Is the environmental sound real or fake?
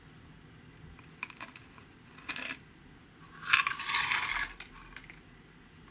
real